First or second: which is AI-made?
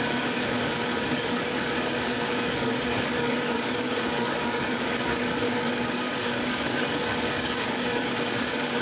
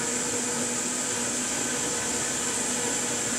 first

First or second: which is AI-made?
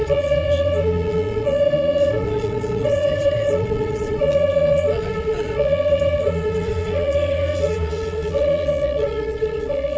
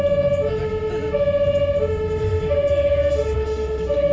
first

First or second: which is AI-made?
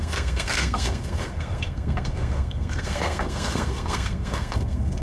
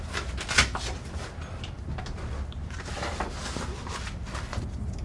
first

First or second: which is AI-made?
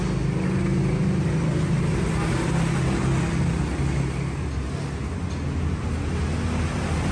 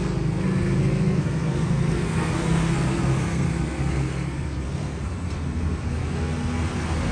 second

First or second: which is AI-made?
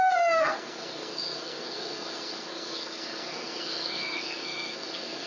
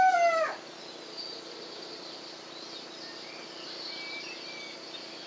first